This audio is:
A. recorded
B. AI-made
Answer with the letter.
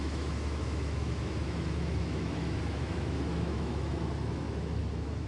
B